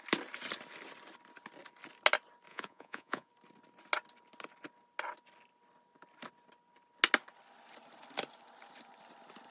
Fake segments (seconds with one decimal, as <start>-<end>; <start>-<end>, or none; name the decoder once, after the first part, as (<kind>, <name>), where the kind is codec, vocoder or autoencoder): 2.5-3.3 (vocoder, Vocos)